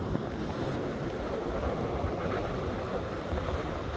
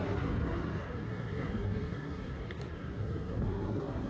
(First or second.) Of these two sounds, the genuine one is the first